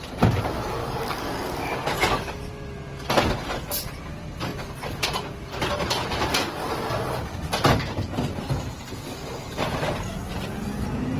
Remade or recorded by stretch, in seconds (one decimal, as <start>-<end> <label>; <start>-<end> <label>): 0.0-0.8 recorded; 0.8-2.5 remade; 2.5-11.2 recorded